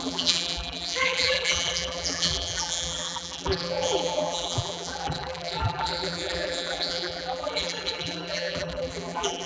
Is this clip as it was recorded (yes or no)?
no